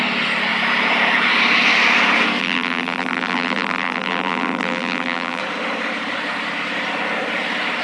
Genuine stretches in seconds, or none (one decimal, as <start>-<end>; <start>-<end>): 0.0-2.4; 5.4-7.8